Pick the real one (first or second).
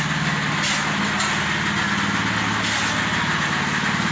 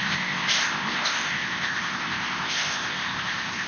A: first